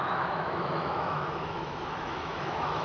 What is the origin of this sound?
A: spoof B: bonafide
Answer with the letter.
A